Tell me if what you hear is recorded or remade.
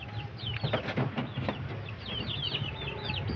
recorded